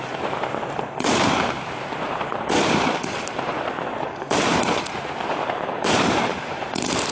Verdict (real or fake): fake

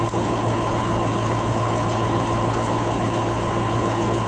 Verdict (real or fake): fake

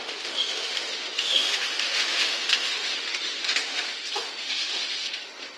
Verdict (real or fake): fake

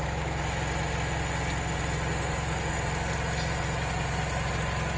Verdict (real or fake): real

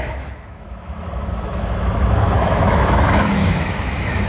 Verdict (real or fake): fake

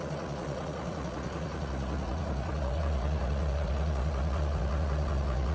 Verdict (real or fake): fake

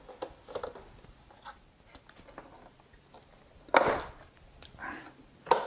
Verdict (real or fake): real